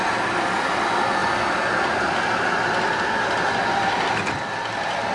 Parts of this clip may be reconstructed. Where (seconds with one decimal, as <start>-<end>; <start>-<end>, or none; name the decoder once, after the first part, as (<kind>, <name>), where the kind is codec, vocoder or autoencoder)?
none